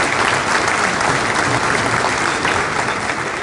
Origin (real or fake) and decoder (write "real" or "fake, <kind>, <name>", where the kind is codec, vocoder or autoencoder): real